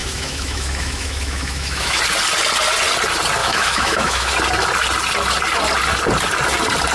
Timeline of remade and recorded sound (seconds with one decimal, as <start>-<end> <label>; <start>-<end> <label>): 0.0-2.0 remade; 2.0-3.4 recorded; 3.4-4.3 remade; 4.3-6.9 recorded